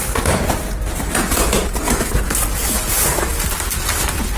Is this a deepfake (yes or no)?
no